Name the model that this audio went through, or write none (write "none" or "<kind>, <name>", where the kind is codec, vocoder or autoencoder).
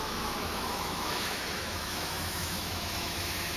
autoencoder, DAC-VAE